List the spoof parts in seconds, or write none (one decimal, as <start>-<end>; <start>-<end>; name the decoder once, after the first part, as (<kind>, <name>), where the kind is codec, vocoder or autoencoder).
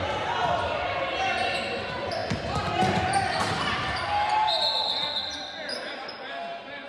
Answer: none